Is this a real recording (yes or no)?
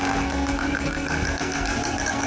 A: no